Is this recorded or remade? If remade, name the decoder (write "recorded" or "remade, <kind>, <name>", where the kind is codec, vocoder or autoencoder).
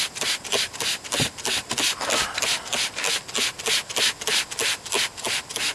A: recorded